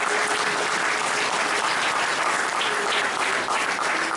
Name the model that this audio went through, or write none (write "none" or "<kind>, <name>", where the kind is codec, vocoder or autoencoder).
vocoder, BigVGAN v2